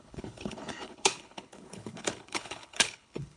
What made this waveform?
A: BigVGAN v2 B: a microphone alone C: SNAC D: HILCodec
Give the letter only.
D